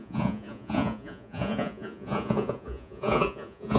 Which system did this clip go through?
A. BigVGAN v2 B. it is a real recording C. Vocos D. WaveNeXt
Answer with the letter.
C